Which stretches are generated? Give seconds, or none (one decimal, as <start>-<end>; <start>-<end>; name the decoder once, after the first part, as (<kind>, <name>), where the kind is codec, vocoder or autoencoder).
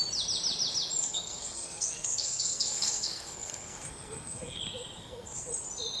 1.0-4.6 (codec, SNAC); 5.0-5.5